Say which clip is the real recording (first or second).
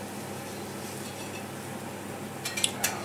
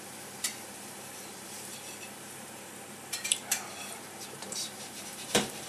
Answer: first